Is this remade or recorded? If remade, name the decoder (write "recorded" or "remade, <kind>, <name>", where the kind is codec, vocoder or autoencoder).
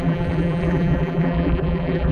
remade, vocoder, BigVGAN v2